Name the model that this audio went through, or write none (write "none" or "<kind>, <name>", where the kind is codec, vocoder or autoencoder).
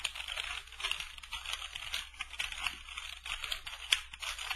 none